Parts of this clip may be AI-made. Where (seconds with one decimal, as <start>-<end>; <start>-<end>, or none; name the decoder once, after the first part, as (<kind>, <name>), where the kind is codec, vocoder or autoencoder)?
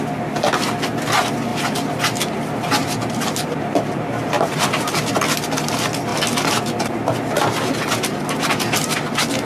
1.5-4.9 (vocoder, BigVGAN v2)